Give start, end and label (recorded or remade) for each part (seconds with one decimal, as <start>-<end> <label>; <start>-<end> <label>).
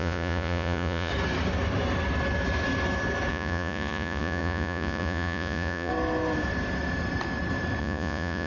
0.0-1.1 remade; 1.1-3.3 recorded; 3.3-5.9 remade; 5.9-7.8 recorded; 7.8-8.5 remade